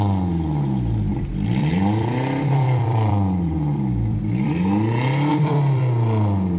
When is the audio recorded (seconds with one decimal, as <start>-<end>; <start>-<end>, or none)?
0.0-1.1; 4.5-5.3; 5.8-6.6